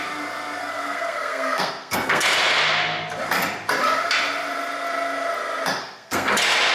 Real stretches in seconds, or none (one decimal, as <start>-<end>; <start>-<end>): 0.0-0.6; 2.3-5.8; 6.3-6.7

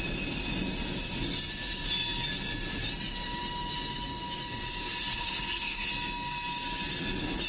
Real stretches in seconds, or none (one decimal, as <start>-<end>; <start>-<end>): 0.0-5.1; 5.9-7.5

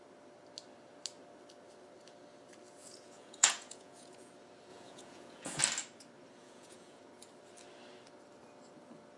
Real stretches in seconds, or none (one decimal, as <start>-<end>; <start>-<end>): 0.0-2.8; 4.3-4.7; 5.6-6.4; 7.0-9.2

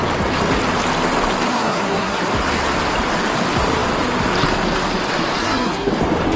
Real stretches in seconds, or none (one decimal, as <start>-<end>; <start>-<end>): 0.0-1.5; 2.2-5.4; 5.9-6.4

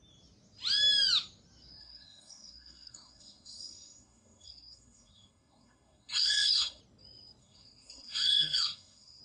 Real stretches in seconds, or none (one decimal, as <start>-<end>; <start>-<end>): 0.0-1.8; 6.8-7.4